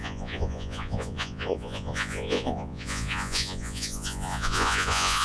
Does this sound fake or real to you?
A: fake